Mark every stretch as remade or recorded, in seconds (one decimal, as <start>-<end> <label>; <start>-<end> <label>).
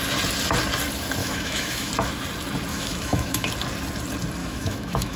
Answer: 0.0-1.2 recorded; 1.2-1.9 remade; 1.9-2.7 recorded; 2.7-3.5 remade; 3.5-4.4 recorded; 4.4-5.2 remade